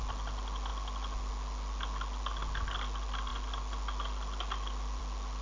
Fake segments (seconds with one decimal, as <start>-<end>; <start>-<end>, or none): none